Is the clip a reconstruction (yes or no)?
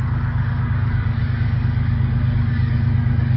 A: yes